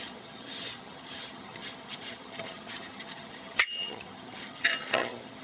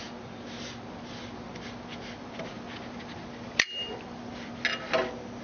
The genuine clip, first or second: second